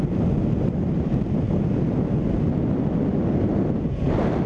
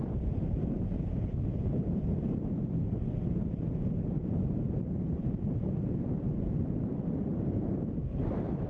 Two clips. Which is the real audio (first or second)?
first